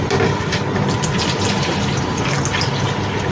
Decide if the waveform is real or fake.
real